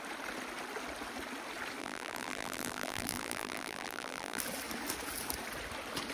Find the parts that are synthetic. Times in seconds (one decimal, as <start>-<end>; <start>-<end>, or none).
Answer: 1.8-4.4